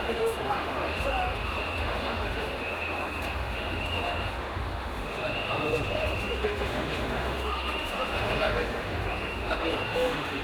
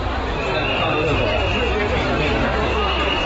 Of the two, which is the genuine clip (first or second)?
second